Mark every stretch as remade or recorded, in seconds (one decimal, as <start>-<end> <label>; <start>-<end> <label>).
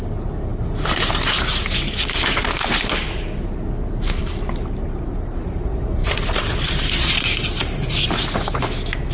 0.0-9.1 recorded